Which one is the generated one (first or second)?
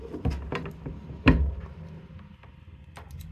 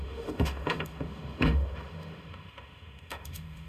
second